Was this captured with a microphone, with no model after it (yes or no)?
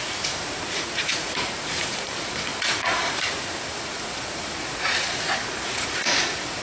no